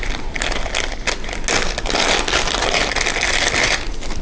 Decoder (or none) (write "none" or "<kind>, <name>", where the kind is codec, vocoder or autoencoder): none